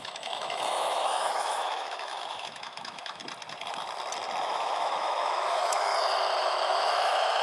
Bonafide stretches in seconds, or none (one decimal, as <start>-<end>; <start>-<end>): 3.2-4.4; 5.9-6.4